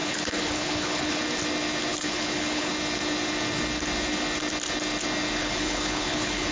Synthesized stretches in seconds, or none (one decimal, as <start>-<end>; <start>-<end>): 0.0-1.2; 1.9-2.7; 5.4-6.5